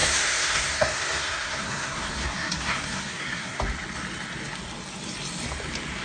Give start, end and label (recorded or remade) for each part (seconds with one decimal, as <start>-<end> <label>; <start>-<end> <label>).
0.0-3.6 remade; 3.6-6.0 recorded